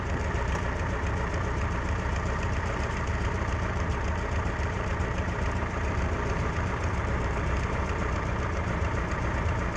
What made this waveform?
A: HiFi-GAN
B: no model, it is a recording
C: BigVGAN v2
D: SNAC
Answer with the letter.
C